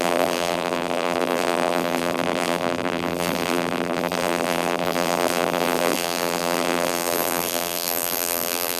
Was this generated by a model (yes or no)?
yes